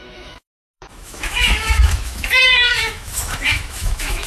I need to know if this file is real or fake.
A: fake